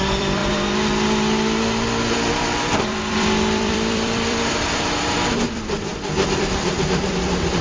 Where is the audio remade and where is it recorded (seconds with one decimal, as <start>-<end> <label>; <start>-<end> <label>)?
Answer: 0.0-0.4 remade; 0.4-2.9 recorded; 2.9-7.6 remade